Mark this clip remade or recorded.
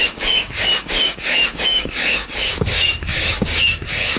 remade